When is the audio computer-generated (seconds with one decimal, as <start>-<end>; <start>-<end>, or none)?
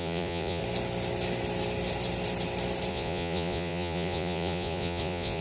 0.0-0.6; 2.9-5.4